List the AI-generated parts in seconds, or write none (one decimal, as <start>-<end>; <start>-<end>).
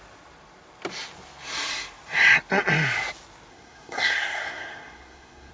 3.5-5.5